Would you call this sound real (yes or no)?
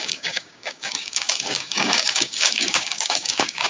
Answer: no